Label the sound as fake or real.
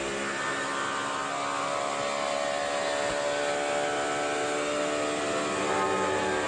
real